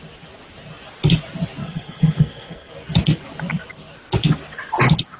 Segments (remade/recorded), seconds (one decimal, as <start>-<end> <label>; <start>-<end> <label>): 0.0-1.6 recorded; 1.6-2.7 remade; 2.7-5.2 recorded

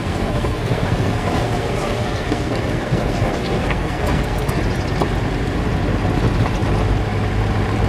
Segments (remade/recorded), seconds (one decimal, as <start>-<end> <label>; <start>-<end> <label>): 0.0-4.6 remade; 4.6-7.9 recorded

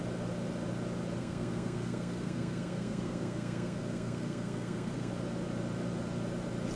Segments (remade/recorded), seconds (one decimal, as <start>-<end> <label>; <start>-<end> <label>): 0.0-1.2 recorded; 1.2-5.1 remade; 5.1-6.8 recorded

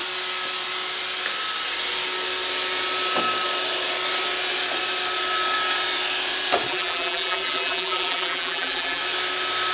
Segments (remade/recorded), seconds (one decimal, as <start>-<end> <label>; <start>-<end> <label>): 0.0-6.7 recorded; 6.7-9.0 remade; 9.0-9.7 recorded